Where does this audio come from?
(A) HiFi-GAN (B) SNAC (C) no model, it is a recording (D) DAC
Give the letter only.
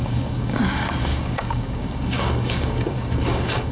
D